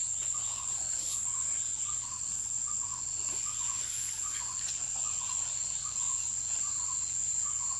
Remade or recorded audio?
remade